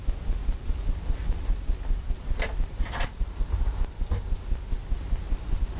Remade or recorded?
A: recorded